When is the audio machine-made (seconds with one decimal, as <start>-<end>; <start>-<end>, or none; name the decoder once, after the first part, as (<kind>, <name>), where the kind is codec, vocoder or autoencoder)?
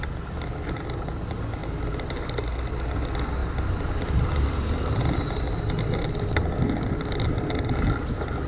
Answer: none